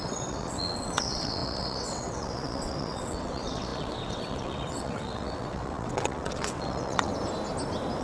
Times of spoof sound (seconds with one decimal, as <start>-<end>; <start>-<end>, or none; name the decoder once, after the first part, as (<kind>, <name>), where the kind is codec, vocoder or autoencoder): 0.0-7.1 (vocoder, WaveNeXt)